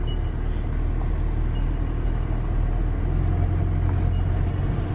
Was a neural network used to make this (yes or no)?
no